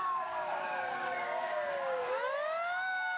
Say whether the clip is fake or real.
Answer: fake